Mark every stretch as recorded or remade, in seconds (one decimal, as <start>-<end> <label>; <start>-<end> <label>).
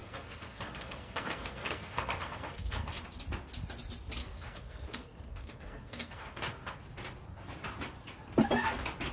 0.0-2.9 remade; 2.9-4.2 recorded; 4.2-6.8 remade; 6.8-9.1 recorded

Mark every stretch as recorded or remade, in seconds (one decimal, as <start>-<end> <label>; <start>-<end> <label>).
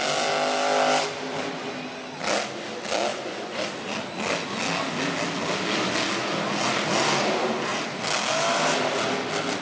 0.0-3.1 recorded; 3.1-3.6 remade; 3.6-9.6 recorded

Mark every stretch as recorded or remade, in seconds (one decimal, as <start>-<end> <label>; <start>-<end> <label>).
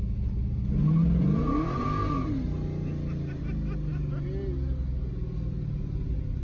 0.0-6.4 recorded